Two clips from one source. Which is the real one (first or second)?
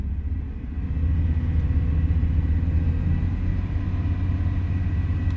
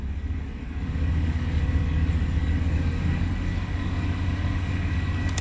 first